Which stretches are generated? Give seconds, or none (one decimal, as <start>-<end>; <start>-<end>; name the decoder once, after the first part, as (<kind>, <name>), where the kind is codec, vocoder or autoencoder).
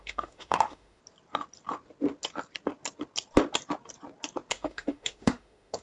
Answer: 0.0-1.0 (autoencoder, DAC-VAE); 4.5-5.8